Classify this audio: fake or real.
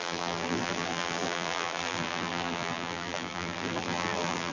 fake